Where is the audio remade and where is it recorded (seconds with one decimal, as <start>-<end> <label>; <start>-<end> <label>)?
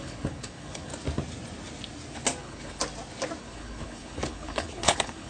0.0-0.9 remade; 0.9-2.4 recorded; 2.4-2.8 remade; 2.8-3.4 recorded; 3.4-5.3 remade